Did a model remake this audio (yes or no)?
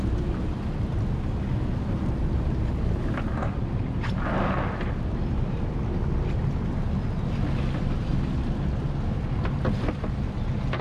no